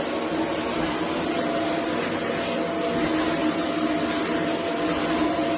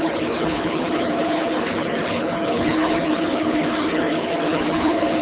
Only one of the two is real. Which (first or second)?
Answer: first